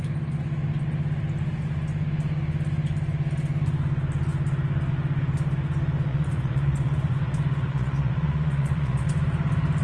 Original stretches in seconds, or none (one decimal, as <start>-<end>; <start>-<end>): 0.0-6.1; 9.1-9.8